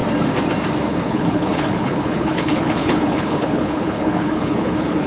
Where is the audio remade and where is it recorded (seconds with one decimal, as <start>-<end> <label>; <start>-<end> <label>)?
0.0-0.9 recorded; 0.9-5.1 remade

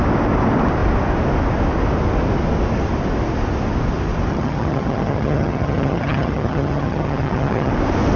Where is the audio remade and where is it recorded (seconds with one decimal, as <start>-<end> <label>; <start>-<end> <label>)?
0.0-4.3 recorded; 4.3-7.7 remade; 7.7-8.2 recorded

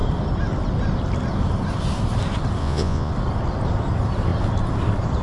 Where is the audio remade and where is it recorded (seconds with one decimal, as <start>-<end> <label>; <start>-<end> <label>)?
0.0-2.6 recorded; 2.6-3.1 remade; 3.1-5.2 recorded